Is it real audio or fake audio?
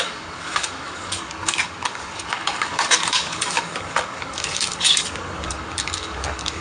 fake